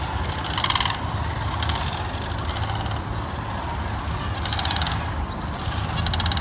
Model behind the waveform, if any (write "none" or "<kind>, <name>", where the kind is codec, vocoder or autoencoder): none